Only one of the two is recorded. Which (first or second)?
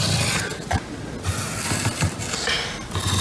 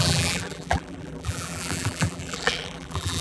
first